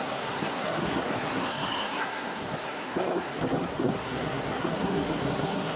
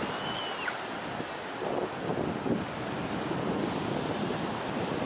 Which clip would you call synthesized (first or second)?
first